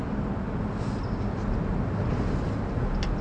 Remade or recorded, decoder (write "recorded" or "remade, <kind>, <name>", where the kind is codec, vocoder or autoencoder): recorded